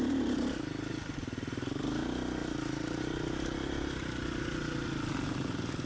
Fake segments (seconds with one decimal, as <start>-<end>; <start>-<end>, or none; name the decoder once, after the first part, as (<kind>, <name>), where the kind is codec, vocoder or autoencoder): 0.9-1.8 (vocoder, BigVGAN v2); 2.4-3.0